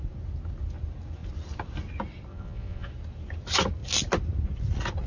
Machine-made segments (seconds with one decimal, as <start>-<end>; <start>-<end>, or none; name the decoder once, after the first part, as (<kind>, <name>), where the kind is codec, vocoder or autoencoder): 2.3-2.9 (vocoder, Vocos)